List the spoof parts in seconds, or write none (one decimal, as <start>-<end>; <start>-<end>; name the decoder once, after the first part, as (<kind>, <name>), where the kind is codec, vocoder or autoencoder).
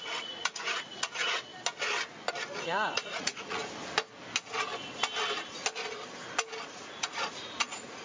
0.0-1.5 (vocoder, Vocos); 2.3-3.6; 6.6-8.0